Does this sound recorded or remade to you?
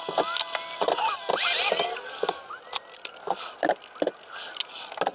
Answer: recorded